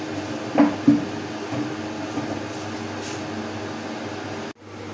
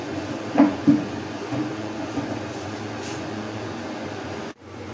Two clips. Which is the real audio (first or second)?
first